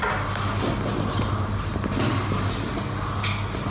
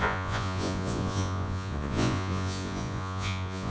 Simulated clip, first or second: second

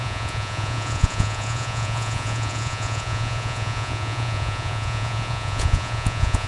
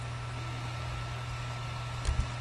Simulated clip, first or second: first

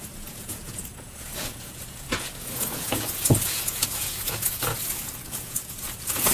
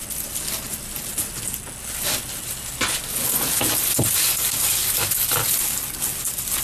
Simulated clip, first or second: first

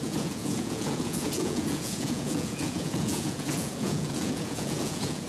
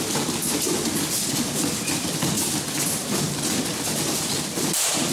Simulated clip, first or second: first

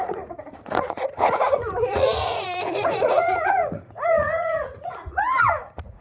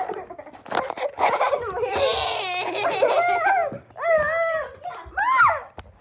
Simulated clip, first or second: first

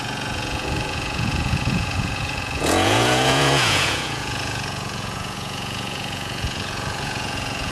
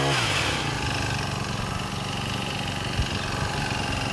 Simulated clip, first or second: first